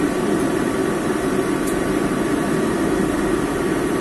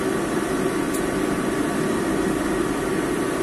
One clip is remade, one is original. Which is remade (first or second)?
first